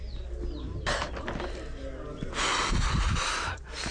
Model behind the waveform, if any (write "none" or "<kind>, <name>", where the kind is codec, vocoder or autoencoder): none